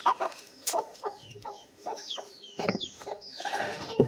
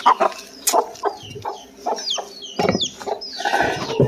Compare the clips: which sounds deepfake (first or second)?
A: first